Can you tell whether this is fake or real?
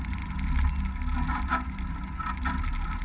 real